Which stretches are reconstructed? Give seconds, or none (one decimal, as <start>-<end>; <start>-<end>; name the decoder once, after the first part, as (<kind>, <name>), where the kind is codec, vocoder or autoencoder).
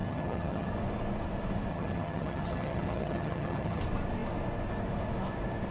0.0-0.7 (vocoder, HiFi-GAN); 1.7-3.8